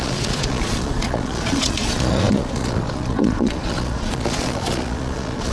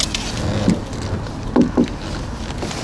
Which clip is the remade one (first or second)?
first